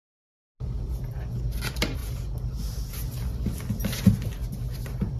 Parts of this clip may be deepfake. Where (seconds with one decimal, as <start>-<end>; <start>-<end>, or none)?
none